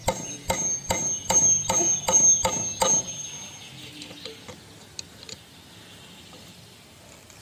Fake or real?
real